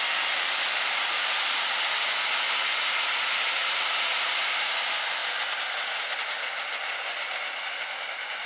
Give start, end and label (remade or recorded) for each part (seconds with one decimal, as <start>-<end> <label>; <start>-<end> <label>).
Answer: 0.0-8.5 recorded